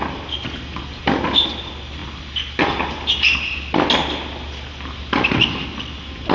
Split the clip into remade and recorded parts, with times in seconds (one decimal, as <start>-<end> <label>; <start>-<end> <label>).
0.0-6.3 recorded